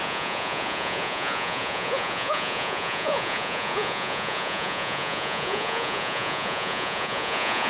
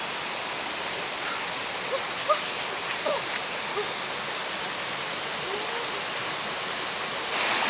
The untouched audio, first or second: second